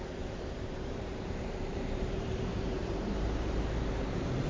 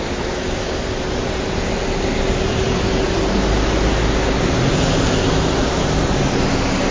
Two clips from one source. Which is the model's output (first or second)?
first